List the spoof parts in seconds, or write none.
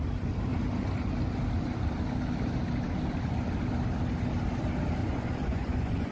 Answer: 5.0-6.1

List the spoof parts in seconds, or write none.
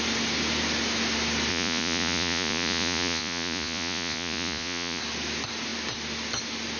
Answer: 1.5-5.0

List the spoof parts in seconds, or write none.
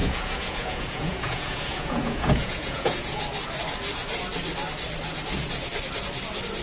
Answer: 0.0-3.2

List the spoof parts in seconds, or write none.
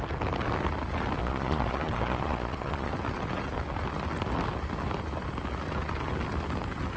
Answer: 1.2-2.9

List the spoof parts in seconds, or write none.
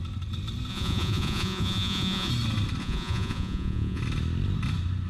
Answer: 0.7-2.3; 2.8-4.0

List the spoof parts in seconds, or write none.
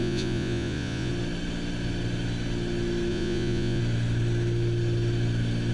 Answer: 0.0-1.1; 3.1-3.8